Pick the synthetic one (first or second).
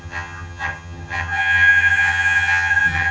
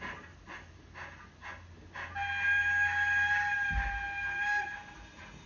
first